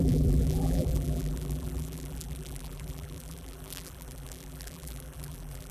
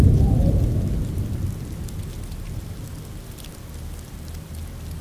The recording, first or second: second